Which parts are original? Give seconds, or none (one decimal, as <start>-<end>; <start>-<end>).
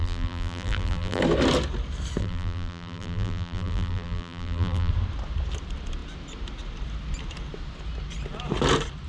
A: 1.2-2.2; 4.9-9.1